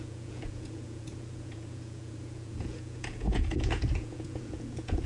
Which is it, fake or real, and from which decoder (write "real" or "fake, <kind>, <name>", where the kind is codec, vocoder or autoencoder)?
fake, vocoder, Vocos